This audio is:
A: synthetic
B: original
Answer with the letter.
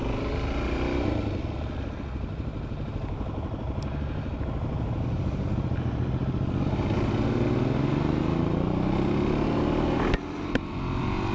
B